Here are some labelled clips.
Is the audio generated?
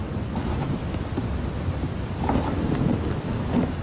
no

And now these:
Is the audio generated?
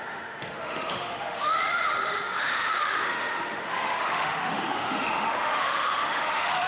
yes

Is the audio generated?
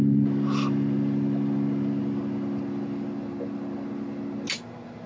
no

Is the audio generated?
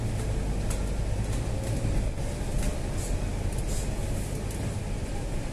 no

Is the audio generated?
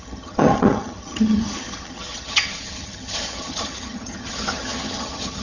yes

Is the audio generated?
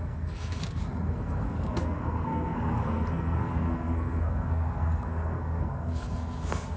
yes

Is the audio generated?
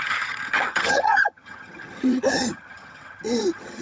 yes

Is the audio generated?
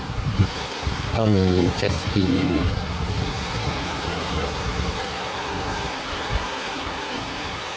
yes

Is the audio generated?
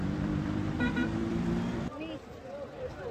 yes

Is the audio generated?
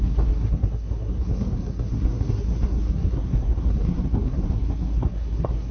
yes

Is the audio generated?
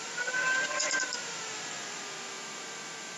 yes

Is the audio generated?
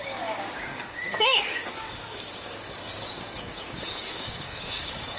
yes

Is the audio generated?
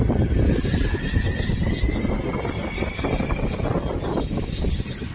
no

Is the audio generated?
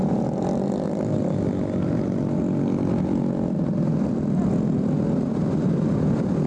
no